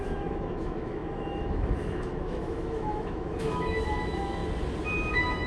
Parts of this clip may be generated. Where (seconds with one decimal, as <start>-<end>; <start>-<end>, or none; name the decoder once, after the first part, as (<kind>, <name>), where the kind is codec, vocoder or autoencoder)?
0.0-4.4 (autoencoder, DAC-VAE); 5.1-5.5